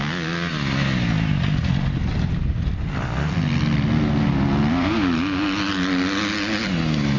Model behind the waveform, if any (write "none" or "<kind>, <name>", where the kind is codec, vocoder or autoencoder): none